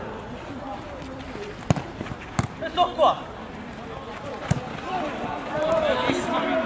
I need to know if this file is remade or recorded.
recorded